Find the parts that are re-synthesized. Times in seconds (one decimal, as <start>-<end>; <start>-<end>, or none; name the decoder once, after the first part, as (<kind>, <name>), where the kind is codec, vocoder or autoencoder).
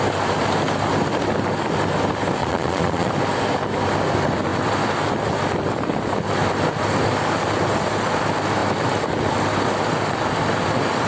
2.4-3.1 (vocoder, Vocos)